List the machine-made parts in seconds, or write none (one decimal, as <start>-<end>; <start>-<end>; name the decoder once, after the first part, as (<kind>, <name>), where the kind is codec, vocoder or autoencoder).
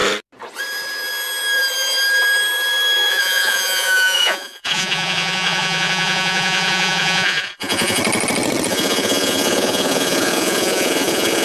3.1-8.0 (vocoder, Vocos); 8.7-11.4